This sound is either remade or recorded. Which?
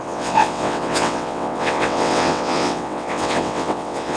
remade